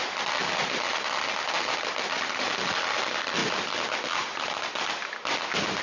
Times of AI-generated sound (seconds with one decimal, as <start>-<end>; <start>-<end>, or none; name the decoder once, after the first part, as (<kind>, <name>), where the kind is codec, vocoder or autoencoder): none